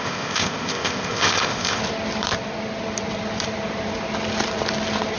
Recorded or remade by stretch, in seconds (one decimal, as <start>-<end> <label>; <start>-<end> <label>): 0.0-1.8 remade; 1.8-5.2 recorded

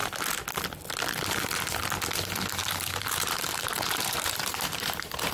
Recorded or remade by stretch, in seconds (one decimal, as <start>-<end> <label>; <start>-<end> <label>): 0.0-2.6 recorded; 2.6-5.3 remade

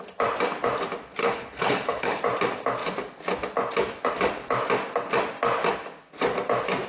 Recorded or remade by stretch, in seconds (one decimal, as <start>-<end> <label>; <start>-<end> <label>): 0.0-1.2 recorded; 1.2-2.2 remade; 2.2-6.9 recorded

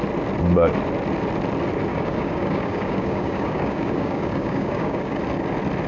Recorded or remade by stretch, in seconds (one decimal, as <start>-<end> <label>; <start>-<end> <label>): 0.0-1.9 recorded; 1.9-5.2 remade; 5.2-5.9 recorded